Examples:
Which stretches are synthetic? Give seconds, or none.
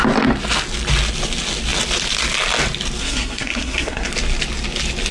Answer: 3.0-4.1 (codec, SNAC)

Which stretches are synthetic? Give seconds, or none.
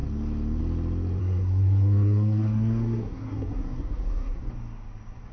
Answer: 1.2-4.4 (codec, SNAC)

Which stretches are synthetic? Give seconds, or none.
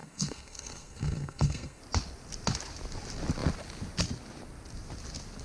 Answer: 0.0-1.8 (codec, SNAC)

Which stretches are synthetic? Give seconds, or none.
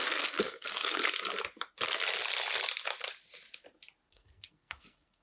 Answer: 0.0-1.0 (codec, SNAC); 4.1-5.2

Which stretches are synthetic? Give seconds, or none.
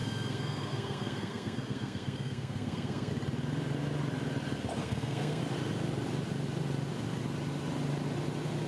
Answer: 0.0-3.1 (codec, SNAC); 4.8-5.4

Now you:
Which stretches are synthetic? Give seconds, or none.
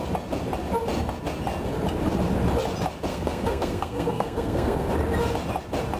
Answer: 3.1-4.9 (codec, SNAC)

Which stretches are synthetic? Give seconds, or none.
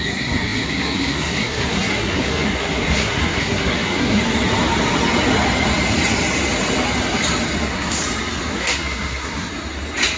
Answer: 0.0-4.2 (codec, SNAC); 7.6-8.0; 8.5-9.5